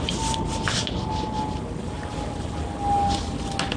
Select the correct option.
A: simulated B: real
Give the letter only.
B